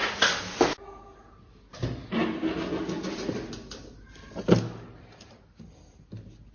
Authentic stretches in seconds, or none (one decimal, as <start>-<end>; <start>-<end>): 0.0-6.5